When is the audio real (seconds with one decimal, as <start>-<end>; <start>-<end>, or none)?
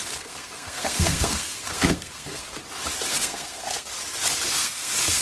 2.6-3.1; 3.9-4.5